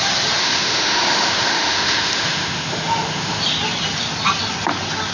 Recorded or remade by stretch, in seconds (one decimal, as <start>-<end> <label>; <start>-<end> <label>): 0.0-0.4 recorded; 0.4-3.4 remade; 3.4-5.1 recorded

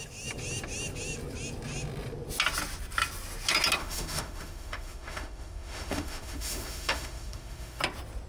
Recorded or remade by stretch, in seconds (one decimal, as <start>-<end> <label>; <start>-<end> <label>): 0.0-3.8 recorded; 3.8-7.8 remade; 7.8-8.3 recorded

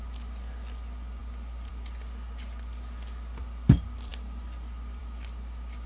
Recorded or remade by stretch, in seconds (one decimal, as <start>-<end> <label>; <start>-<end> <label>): 0.0-5.9 recorded

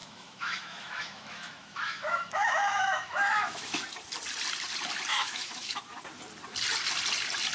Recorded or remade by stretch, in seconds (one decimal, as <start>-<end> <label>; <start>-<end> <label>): 0.0-3.8 remade; 3.8-5.1 recorded; 5.1-5.8 remade; 5.8-7.5 recorded

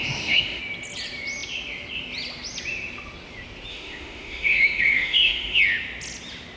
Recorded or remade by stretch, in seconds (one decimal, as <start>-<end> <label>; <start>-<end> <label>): 0.0-0.6 remade; 0.6-3.7 recorded; 3.7-5.6 remade; 5.6-6.6 recorded

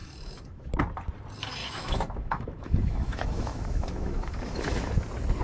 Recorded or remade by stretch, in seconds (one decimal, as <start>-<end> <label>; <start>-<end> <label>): 0.0-0.7 remade; 0.7-1.6 recorded; 1.6-4.8 remade; 4.8-5.4 recorded

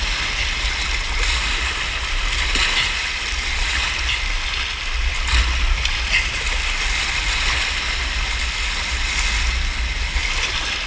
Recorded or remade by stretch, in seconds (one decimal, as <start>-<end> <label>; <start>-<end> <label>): 0.0-10.9 recorded

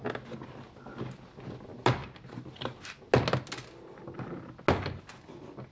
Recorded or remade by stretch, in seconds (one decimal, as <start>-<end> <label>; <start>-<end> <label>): 0.0-5.7 recorded